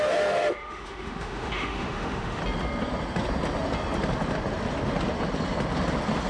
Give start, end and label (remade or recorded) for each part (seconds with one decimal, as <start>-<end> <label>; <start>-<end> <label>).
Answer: 0.0-2.4 remade; 2.4-6.3 recorded